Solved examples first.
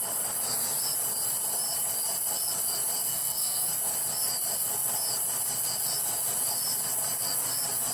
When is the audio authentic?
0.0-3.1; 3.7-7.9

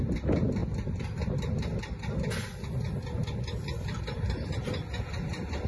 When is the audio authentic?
0.0-5.7